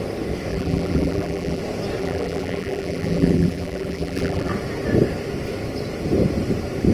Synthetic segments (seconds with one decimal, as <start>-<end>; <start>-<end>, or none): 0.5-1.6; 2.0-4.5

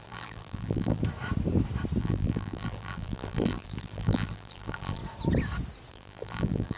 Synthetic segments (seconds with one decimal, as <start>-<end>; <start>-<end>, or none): 0.0-1.0; 2.0-5.0; 5.9-6.8

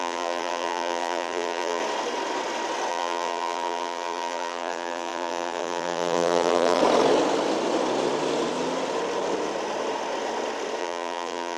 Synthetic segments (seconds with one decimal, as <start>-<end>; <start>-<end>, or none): 0.0-1.8; 2.9-6.8; 10.8-11.6

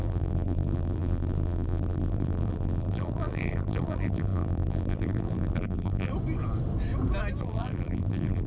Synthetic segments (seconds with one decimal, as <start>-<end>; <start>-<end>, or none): 0.0-6.1; 7.4-8.5